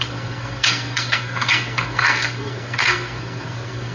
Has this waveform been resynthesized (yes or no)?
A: yes